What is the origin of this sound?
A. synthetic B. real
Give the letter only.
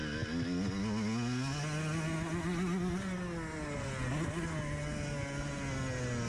B